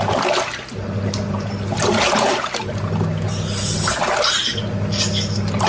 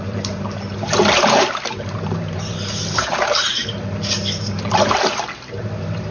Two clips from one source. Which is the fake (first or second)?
second